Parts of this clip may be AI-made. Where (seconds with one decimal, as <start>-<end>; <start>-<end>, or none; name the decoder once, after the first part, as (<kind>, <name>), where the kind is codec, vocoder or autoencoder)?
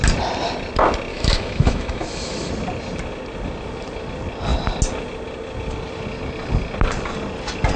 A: 1.1-2.5 (autoencoder, DAC-VAE)